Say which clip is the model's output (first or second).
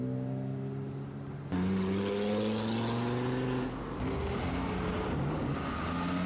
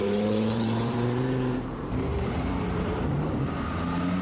second